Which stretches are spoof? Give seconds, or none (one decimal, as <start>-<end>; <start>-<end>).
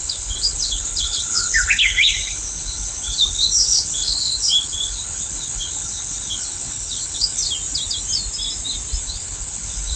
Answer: 0.0-7.4; 9.0-10.0